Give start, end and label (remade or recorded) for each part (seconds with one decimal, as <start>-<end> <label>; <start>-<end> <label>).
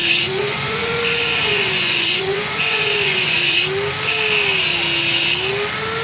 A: 0.0-3.6 remade; 3.6-6.0 recorded